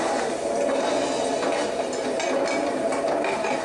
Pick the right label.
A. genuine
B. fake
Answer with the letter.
A